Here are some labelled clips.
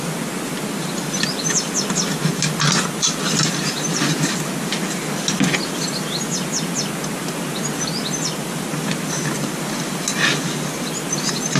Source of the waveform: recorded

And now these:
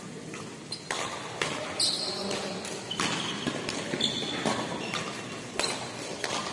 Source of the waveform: recorded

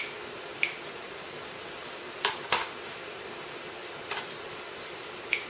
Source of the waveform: recorded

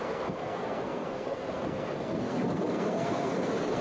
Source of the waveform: remade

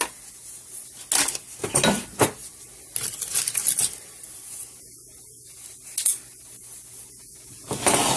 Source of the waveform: recorded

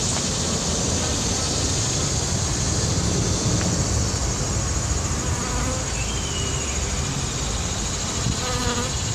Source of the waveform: recorded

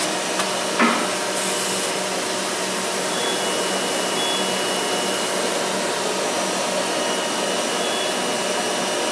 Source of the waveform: recorded